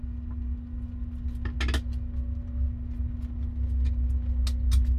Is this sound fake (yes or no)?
no